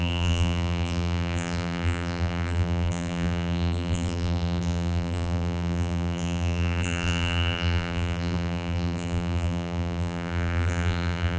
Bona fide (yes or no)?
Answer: no